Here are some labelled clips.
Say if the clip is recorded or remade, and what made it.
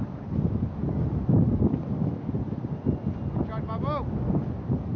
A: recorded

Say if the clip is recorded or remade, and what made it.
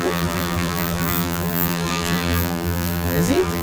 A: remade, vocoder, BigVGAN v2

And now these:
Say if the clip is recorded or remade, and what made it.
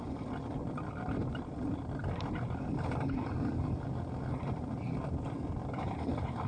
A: remade, vocoder, BigVGAN v2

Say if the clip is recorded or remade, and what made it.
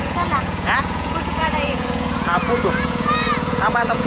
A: remade, vocoder, Vocos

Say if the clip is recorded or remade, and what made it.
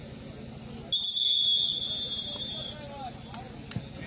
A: recorded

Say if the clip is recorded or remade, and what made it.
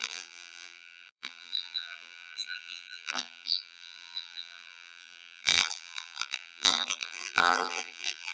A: remade, vocoder, BigVGAN v2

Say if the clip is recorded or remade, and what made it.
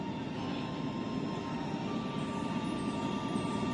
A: recorded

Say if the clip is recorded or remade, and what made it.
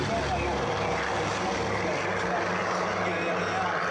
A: recorded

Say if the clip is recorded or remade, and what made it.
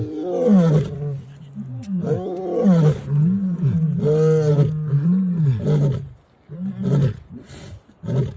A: recorded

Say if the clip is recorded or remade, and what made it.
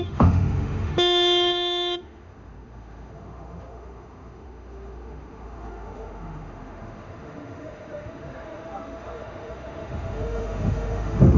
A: remade, autoencoder, DAC-VAE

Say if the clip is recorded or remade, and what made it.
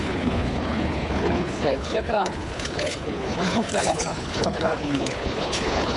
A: remade, codec, HILCodec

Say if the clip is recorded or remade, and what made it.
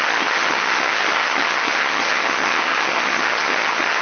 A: remade, vocoder, HiFi-GAN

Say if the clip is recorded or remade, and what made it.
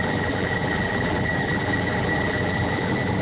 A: remade, vocoder, BigVGAN v2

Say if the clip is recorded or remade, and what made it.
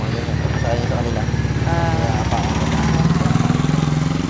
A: recorded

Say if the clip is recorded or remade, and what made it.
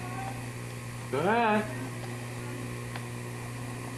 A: recorded